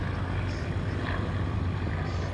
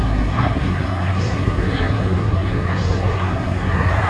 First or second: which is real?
first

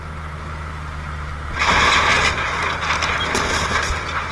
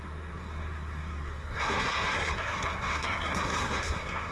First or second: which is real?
first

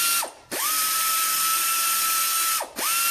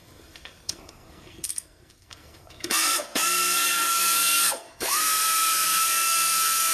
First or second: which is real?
first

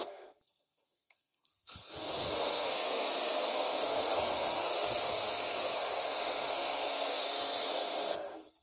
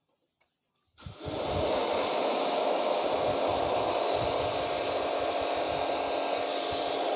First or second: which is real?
second